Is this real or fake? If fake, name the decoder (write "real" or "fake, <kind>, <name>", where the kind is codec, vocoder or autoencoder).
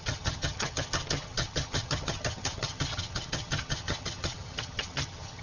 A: fake, vocoder, HiFi-GAN